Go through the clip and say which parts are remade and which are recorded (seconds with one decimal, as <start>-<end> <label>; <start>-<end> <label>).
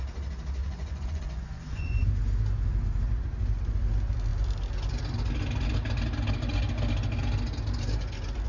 0.0-0.6 recorded; 0.6-2.1 remade; 2.1-8.5 recorded